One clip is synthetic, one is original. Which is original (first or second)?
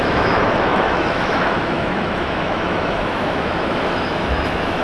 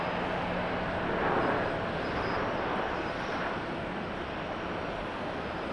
second